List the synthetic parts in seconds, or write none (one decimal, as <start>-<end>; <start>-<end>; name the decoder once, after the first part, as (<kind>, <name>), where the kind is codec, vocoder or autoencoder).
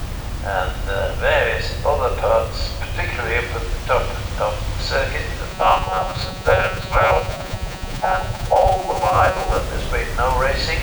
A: 5.5-9.6 (vocoder, Vocos)